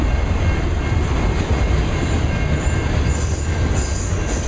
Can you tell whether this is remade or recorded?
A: recorded